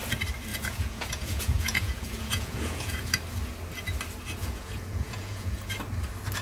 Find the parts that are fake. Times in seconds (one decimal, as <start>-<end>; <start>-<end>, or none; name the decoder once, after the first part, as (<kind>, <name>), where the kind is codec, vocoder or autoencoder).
0.5-3.1 (vocoder, Vocos); 4.4-5.7